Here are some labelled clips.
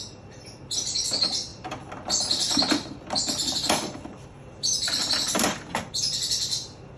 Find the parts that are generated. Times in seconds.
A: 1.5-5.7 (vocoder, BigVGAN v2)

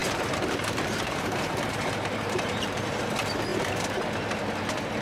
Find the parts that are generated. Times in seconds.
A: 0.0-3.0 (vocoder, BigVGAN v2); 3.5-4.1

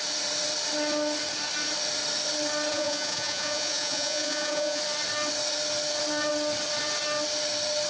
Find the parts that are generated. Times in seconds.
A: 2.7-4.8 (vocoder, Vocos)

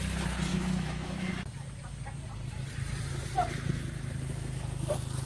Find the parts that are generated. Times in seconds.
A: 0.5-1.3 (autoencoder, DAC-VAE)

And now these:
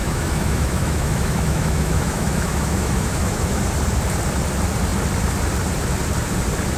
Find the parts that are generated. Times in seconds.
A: 0.0-3.6 (autoencoder, DAC-VAE)